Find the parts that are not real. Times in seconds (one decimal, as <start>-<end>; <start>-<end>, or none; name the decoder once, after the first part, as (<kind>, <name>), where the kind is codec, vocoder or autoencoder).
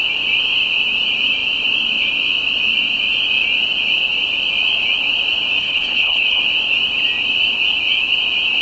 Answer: 5.6-6.4 (codec, HILCodec)